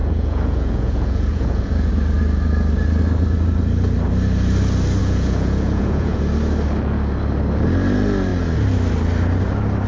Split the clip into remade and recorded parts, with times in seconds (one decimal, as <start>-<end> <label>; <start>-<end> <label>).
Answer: 0.0-1.9 remade; 1.9-5.0 recorded; 5.0-6.2 remade; 6.2-9.9 recorded